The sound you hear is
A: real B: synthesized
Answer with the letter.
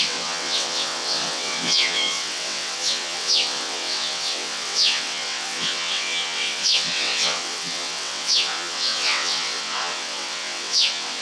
B